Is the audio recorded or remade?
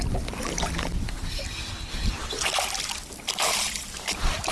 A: recorded